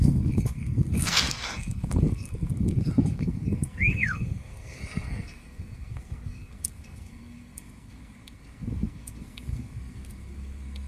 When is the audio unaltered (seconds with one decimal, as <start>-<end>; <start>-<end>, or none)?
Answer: none